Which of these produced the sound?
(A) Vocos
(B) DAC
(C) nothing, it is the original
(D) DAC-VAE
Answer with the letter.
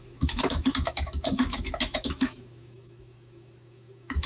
D